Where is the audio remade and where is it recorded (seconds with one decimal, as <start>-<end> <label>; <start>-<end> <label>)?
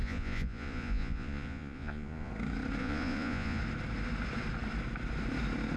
0.0-2.3 remade; 2.3-2.8 recorded; 2.8-3.6 remade; 3.6-5.8 recorded